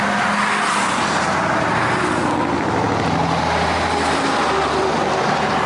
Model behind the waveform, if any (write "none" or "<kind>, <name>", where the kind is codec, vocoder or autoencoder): none